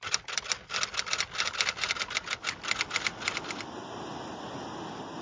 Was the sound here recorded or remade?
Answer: recorded